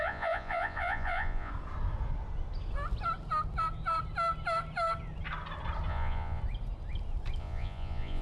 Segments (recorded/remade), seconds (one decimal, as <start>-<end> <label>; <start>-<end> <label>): 0.0-1.5 remade; 1.5-5.9 recorded; 5.9-6.4 remade; 6.4-7.4 recorded; 7.4-8.2 remade

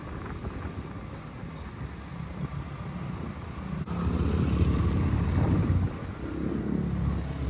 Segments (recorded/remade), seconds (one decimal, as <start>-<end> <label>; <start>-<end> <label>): 0.0-7.5 recorded